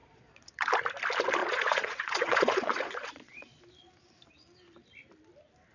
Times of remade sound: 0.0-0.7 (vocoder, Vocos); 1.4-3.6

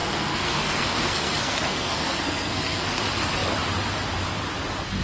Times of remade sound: 0.0-3.0 (codec, SNAC)